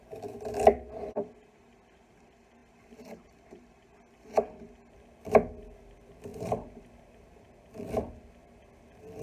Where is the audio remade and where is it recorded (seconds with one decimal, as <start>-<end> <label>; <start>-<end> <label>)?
0.0-9.2 recorded

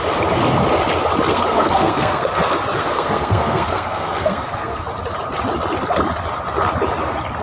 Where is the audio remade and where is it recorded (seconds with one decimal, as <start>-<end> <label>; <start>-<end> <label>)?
0.0-1.3 recorded; 1.3-2.3 remade; 2.3-2.8 recorded; 2.8-4.8 remade; 4.8-7.4 recorded

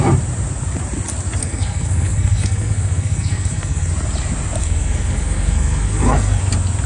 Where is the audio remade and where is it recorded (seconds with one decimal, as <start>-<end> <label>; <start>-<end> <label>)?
0.0-1.4 recorded; 1.4-3.9 remade; 3.9-4.6 recorded; 4.6-6.4 remade; 6.4-6.9 recorded

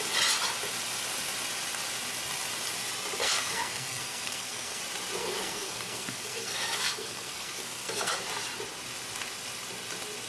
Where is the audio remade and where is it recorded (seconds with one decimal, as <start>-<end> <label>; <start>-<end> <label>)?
0.0-3.2 recorded; 3.2-4.8 remade; 4.8-5.2 recorded; 5.2-8.2 remade; 8.2-10.3 recorded

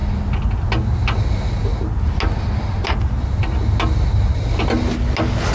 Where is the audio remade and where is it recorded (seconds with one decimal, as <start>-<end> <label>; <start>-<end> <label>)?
0.0-5.5 recorded

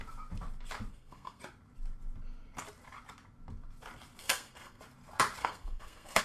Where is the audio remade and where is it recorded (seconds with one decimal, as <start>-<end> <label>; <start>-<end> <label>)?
0.0-0.9 recorded; 0.9-1.4 remade; 1.4-4.2 recorded; 4.2-4.8 remade; 4.8-5.4 recorded; 5.4-6.2 remade

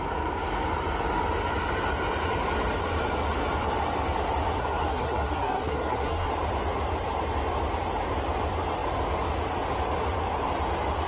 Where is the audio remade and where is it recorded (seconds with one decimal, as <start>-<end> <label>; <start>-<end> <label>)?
0.0-4.6 recorded; 4.6-6.3 remade; 6.3-11.1 recorded